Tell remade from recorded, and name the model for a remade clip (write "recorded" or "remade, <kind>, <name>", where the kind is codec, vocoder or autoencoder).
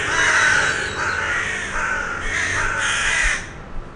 recorded